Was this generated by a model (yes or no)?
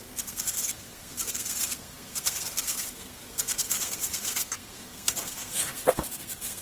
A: yes